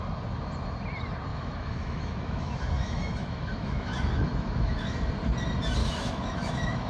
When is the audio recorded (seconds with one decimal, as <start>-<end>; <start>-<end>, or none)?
0.0-1.3; 5.1-5.8